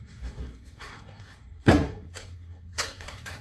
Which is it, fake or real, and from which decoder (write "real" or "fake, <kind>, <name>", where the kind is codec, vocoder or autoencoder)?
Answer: fake, codec, SNAC